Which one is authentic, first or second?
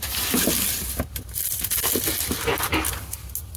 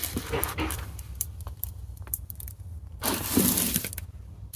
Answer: first